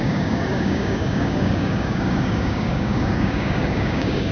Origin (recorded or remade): remade